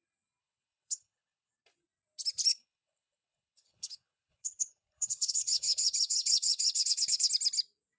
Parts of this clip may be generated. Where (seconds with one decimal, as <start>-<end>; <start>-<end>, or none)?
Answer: 0.4-1.5; 2.5-7.3